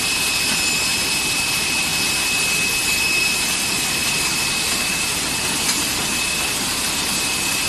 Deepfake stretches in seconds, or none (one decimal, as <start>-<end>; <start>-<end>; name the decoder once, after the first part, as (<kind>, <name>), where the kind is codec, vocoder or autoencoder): none